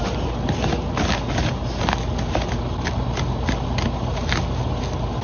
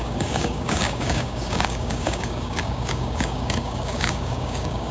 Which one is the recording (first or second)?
first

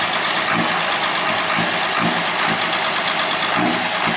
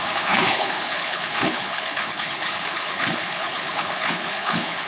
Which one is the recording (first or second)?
first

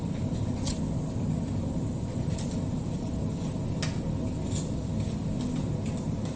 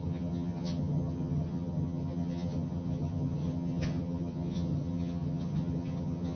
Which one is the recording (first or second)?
first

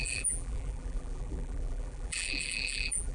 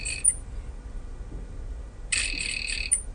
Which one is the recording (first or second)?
second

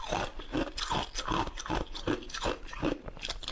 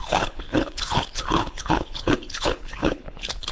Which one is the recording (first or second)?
first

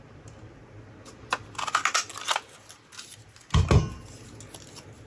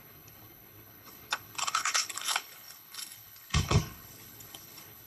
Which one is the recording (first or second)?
first